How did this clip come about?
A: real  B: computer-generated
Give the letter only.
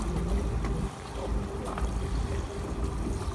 A